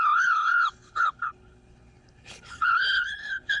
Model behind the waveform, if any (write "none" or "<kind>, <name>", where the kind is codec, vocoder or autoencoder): codec, HILCodec